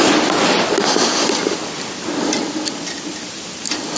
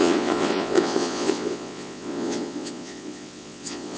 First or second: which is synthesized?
second